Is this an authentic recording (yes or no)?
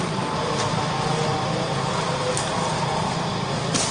yes